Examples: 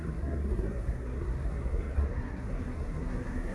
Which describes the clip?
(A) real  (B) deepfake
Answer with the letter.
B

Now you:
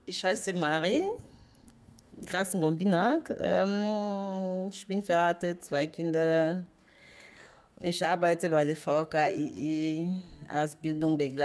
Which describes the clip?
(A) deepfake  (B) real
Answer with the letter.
A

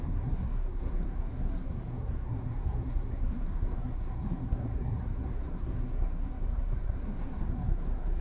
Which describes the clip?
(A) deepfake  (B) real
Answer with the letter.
A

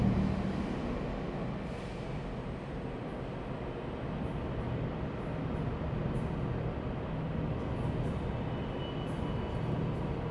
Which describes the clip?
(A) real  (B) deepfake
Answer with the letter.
A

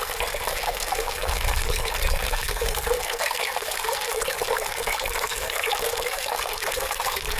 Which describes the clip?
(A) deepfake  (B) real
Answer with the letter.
A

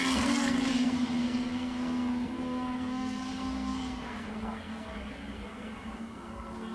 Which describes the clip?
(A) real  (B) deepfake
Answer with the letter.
B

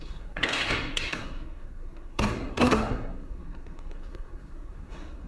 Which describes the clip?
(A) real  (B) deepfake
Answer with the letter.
B